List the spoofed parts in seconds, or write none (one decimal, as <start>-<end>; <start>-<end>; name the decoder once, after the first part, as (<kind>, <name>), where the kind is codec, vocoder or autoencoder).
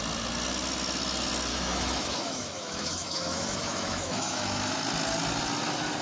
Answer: 1.5-4.7 (autoencoder, DAC-VAE)